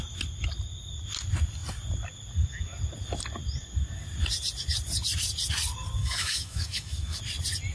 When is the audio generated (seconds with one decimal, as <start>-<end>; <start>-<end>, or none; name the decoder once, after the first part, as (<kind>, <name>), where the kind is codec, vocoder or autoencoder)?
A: 6.0-7.2 (codec, DAC)